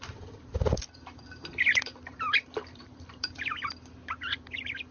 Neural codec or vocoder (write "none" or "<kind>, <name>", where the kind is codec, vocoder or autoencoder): vocoder, BigVGAN v2